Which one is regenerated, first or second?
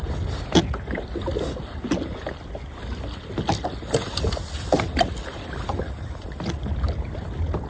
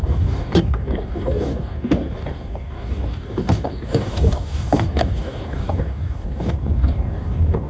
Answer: second